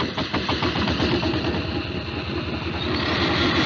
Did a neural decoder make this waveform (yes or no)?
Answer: no